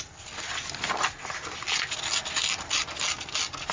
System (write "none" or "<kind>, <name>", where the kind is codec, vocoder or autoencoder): none